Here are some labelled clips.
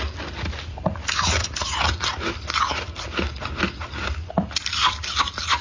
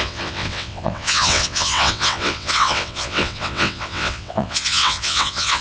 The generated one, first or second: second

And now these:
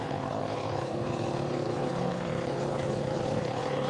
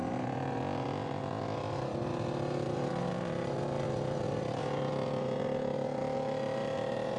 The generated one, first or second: first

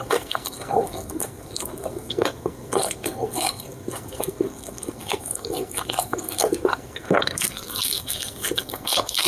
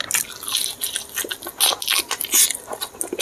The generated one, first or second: first